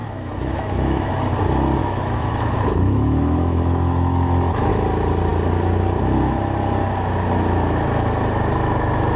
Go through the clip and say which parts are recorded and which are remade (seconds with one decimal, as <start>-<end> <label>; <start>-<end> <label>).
0.0-1.1 remade; 1.1-1.8 recorded; 1.8-4.7 remade; 4.7-9.2 recorded